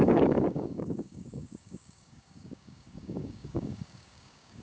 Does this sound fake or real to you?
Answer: fake